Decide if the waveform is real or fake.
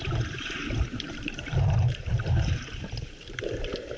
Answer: fake